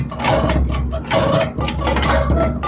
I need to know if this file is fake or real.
real